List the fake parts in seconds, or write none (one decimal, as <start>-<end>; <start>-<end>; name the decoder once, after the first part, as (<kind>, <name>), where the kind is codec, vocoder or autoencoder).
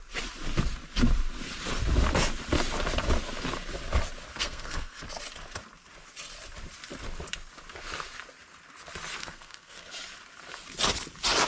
4.3-5.0 (codec, SNAC); 9.2-9.9